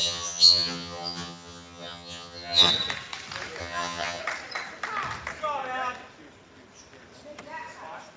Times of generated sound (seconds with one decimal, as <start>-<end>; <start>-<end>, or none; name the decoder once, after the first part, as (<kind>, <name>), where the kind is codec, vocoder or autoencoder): 0.0-2.7 (vocoder, HiFi-GAN); 3.6-4.2